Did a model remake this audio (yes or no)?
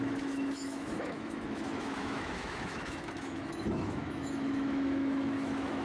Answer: yes